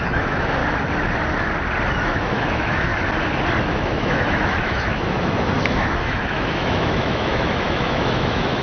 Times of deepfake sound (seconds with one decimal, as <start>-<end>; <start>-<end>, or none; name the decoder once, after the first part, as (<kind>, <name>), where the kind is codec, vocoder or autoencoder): 0.0-0.6 (autoencoder, DAC-VAE); 1.9-2.9; 3.6-8.6